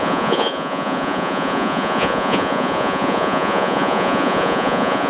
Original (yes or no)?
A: no